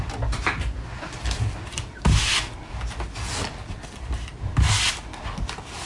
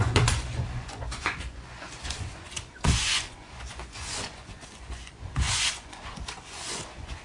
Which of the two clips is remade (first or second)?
second